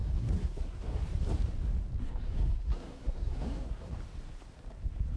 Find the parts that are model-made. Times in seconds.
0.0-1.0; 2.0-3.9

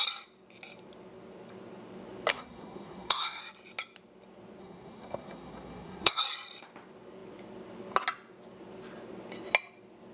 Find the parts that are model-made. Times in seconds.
2.3-3.4; 4.6-6.2